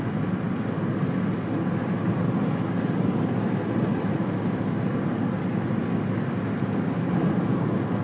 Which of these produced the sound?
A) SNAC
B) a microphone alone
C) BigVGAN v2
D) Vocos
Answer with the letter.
B